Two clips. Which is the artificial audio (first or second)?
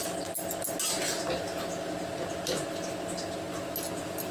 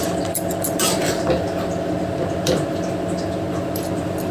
second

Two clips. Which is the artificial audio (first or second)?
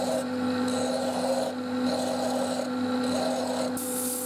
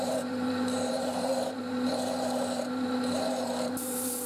second